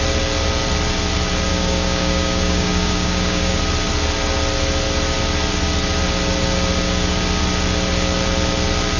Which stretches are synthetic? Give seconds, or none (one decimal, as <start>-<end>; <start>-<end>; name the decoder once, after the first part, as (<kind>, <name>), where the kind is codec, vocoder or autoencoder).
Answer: 1.5-3.6 (codec, DAC)